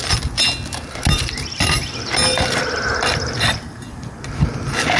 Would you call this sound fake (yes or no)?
no